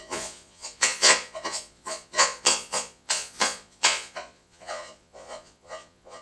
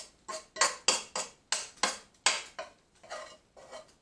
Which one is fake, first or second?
first